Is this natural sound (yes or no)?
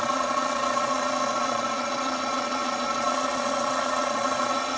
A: no